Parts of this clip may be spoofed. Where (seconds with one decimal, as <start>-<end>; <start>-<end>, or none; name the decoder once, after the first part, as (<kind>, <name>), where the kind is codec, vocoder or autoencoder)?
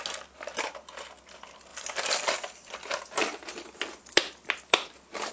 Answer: 1.7-5.3 (vocoder, BigVGAN v2)